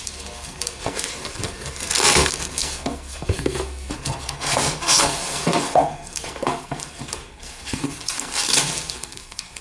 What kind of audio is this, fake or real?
fake